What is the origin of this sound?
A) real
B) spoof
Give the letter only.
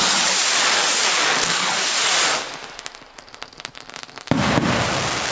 A